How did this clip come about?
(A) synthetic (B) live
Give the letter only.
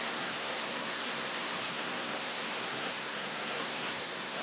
A